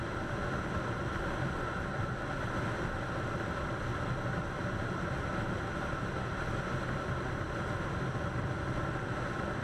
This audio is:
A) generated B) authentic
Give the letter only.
B